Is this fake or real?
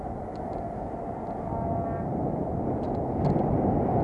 real